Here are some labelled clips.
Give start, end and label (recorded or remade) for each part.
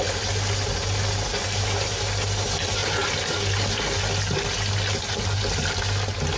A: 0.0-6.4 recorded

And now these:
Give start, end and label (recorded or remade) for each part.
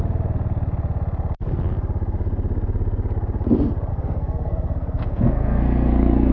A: 0.0-3.9 recorded; 3.9-6.3 remade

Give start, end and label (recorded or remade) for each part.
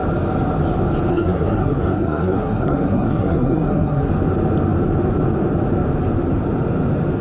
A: 0.0-1.1 recorded; 1.1-4.1 remade; 4.1-7.2 recorded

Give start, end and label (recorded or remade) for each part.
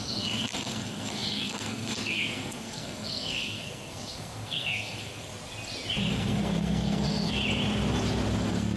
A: 0.0-5.3 remade; 5.3-6.1 recorded; 6.1-7.4 remade; 7.4-8.4 recorded; 8.4-8.8 remade